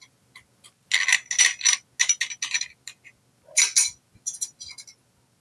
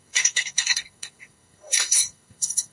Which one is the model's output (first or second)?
second